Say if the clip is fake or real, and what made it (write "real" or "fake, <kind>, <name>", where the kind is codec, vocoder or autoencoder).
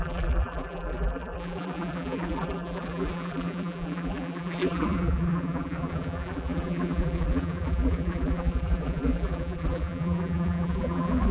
fake, vocoder, BigVGAN v2